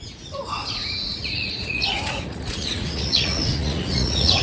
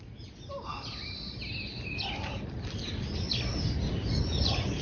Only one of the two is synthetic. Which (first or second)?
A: first